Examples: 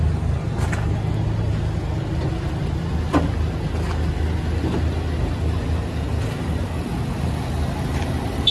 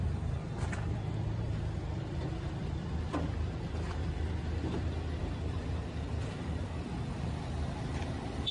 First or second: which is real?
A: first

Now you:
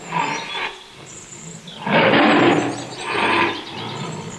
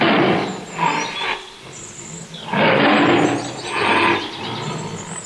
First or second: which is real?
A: second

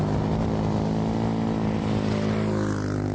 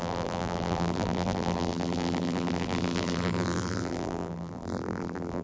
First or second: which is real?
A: first